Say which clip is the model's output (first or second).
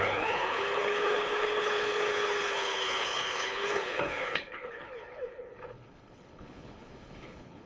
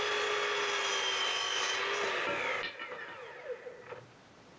first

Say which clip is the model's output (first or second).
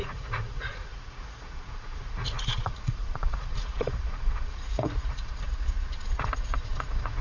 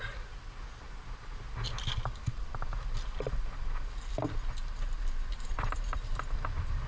first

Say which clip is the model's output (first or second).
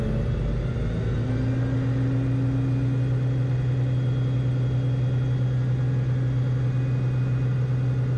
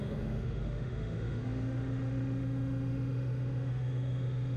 second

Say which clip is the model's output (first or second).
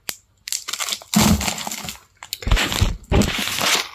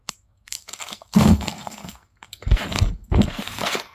second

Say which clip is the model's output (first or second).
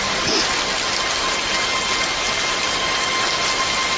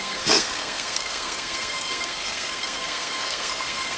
second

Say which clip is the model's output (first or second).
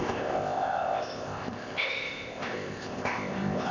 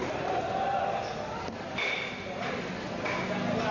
first